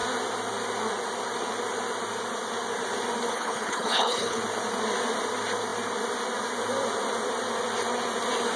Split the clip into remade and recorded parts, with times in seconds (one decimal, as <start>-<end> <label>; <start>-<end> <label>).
0.0-3.3 recorded; 3.3-4.4 remade; 4.4-8.6 recorded